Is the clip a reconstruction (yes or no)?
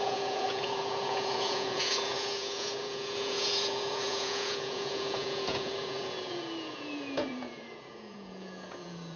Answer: yes